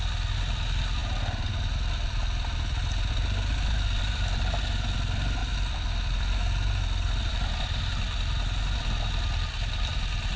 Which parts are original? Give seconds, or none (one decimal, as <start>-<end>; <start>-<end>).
0.0-10.4